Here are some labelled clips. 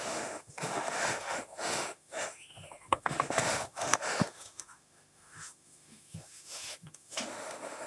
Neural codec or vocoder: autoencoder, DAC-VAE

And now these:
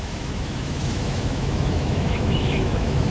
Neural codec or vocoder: autoencoder, DAC-VAE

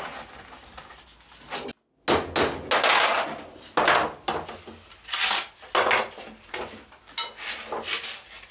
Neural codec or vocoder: none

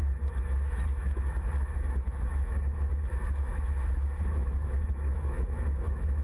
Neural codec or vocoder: autoencoder, DAC-VAE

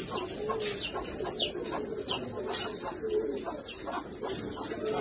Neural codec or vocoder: none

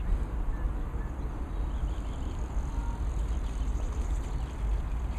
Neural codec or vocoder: none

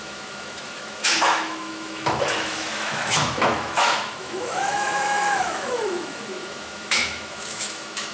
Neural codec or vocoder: autoencoder, DAC-VAE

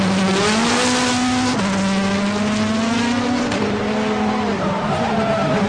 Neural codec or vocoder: none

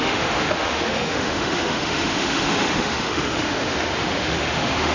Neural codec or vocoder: autoencoder, DAC-VAE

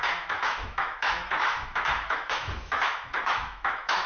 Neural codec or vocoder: autoencoder, DAC-VAE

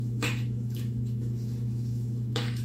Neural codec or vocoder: autoencoder, DAC-VAE